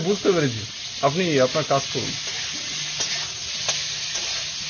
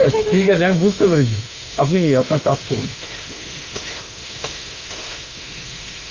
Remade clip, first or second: second